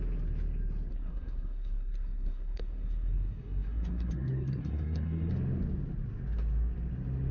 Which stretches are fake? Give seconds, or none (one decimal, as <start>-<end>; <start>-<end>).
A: 0.9-5.3